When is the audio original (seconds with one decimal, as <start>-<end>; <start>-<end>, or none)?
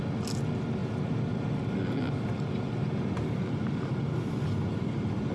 0.0-5.3